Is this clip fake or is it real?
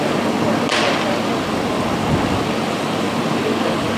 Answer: real